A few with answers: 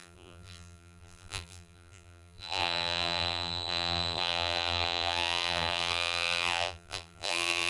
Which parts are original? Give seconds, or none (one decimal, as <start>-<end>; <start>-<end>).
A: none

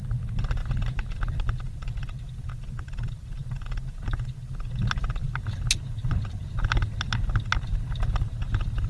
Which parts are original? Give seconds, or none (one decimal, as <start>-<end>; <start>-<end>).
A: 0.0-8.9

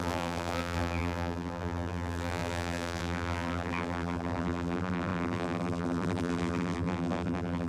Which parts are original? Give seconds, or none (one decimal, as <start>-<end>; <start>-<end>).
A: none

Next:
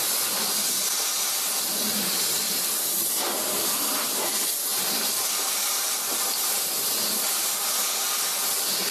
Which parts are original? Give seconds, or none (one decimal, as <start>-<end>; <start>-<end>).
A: 0.0-8.9